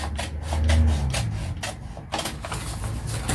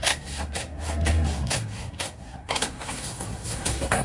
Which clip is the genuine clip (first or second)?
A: first